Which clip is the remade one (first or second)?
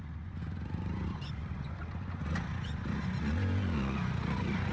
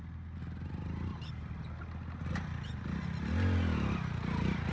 first